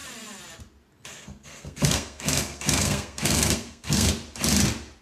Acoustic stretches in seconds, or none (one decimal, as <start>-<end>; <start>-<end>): 0.0-1.1; 4.1-5.0